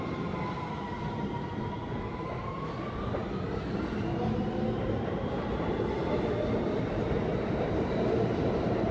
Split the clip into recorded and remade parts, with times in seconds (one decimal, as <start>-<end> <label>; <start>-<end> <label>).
0.0-7.3 recorded; 7.3-7.9 remade; 7.9-8.9 recorded